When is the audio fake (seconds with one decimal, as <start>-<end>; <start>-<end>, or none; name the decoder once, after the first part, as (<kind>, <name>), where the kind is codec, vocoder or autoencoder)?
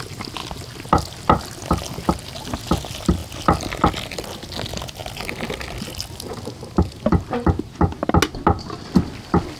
none